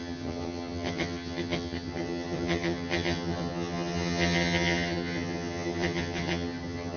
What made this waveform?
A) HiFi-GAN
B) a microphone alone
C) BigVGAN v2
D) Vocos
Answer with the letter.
A